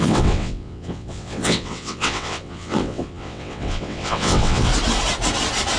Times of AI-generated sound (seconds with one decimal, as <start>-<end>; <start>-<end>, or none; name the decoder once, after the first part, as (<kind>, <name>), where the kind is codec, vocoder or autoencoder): 0.0-4.7 (vocoder, WaveNeXt)